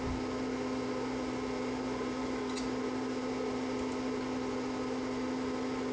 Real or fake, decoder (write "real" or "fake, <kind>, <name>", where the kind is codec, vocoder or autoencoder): real